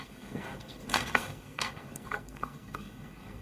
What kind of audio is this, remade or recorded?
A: remade